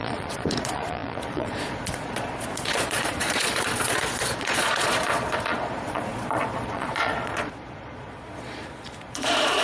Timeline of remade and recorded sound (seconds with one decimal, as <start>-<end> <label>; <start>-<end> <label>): 0.0-9.6 remade